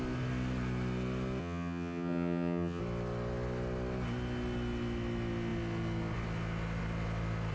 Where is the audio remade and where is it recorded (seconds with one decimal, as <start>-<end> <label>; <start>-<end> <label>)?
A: 0.0-1.4 recorded; 1.4-2.8 remade; 2.8-7.5 recorded